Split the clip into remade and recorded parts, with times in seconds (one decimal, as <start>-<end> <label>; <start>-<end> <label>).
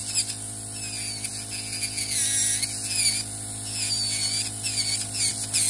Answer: 0.0-5.7 recorded